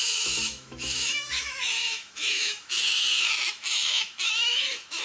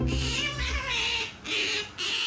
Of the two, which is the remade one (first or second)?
first